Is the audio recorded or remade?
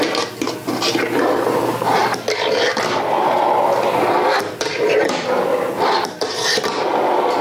recorded